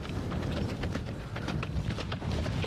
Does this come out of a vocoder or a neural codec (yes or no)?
no